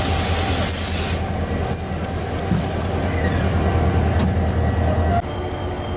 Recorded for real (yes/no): yes